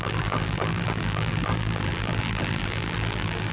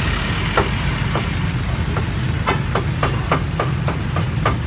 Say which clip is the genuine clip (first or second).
second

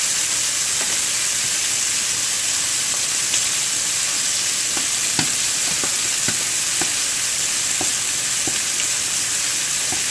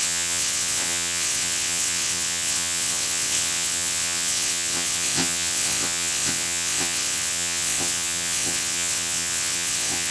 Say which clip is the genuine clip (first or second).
first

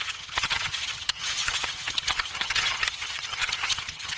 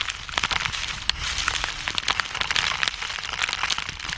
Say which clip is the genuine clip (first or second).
second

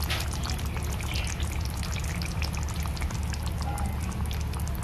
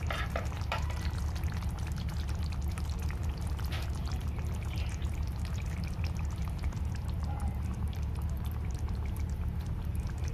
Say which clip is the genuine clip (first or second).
first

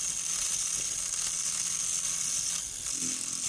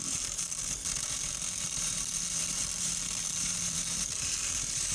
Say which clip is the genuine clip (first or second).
first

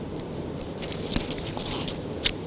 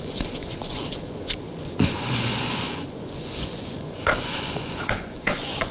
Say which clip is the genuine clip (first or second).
first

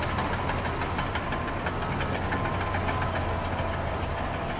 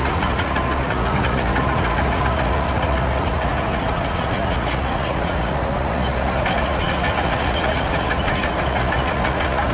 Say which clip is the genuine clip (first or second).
first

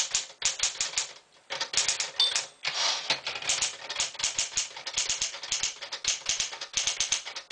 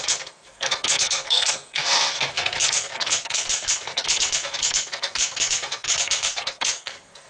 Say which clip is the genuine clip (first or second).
first